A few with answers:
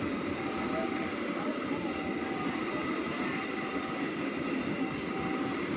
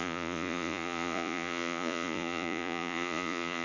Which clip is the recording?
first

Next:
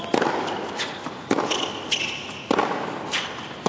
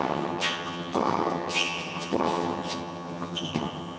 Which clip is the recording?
first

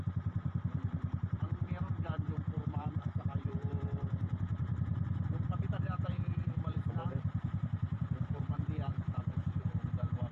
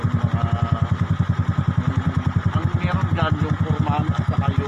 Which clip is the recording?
second